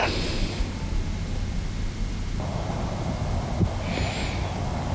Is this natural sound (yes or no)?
yes